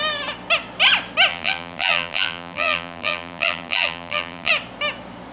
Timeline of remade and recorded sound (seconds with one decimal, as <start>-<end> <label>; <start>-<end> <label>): 0.0-1.3 recorded; 1.3-4.5 remade; 4.5-5.3 recorded